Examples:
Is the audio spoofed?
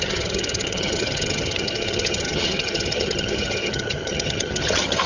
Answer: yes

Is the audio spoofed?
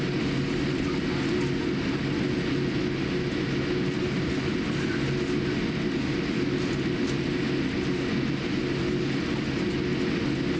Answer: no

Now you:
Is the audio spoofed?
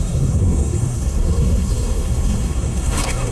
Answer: yes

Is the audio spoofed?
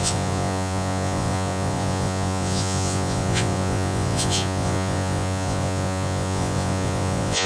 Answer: yes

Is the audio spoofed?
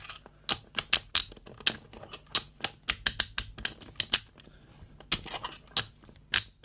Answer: no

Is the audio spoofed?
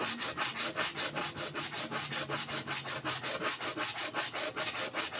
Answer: no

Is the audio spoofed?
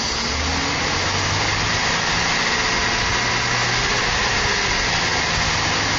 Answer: no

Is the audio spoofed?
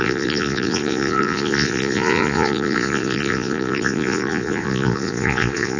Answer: yes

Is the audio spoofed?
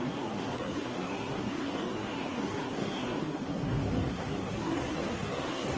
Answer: yes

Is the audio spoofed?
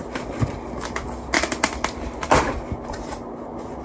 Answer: no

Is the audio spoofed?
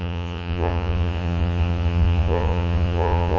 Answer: yes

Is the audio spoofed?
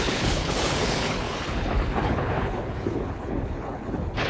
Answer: yes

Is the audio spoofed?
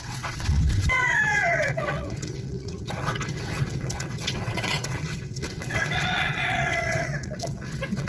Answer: yes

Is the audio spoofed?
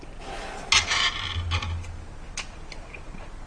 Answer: no